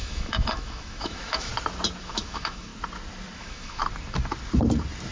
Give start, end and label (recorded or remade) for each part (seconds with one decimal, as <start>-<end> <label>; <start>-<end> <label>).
0.0-1.5 remade; 1.5-2.0 recorded; 2.0-2.7 remade; 2.7-3.4 recorded; 3.4-3.8 remade; 3.8-5.1 recorded